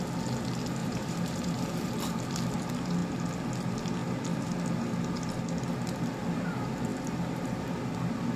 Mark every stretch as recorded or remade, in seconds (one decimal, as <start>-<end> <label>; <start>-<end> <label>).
0.0-0.8 recorded; 0.8-1.9 remade; 1.9-6.9 recorded; 6.9-7.8 remade; 7.8-8.4 recorded